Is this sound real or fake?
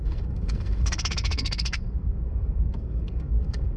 fake